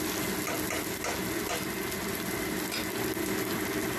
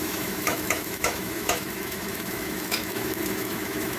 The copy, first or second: second